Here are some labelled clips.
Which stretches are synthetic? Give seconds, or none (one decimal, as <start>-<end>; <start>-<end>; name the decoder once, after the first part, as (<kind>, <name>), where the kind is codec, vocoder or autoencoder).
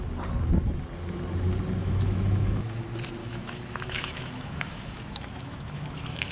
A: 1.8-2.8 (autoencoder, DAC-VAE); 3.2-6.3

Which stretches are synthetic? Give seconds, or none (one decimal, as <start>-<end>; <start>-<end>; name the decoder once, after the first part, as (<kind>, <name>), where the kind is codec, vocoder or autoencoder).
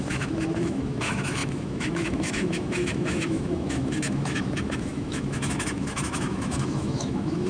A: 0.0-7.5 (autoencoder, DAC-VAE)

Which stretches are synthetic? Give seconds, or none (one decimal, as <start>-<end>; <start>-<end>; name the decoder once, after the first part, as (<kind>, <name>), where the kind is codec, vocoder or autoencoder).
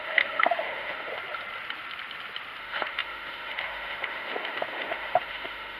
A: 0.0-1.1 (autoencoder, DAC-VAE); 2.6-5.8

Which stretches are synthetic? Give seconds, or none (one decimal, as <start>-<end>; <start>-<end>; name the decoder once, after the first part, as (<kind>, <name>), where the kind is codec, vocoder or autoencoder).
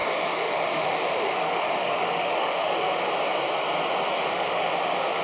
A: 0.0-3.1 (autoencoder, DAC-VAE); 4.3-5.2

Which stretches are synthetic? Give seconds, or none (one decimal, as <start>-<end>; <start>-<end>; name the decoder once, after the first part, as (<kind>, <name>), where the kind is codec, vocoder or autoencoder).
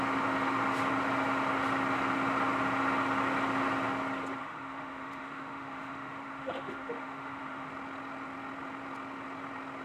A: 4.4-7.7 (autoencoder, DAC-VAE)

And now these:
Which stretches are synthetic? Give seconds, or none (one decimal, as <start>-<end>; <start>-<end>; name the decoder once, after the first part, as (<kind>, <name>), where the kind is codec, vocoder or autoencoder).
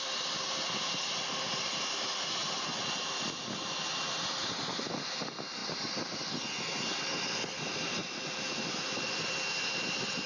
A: none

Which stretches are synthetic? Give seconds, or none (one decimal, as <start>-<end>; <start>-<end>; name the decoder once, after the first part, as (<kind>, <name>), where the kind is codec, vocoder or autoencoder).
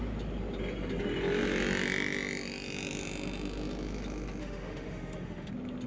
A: 4.4-5.5 (autoencoder, DAC-VAE)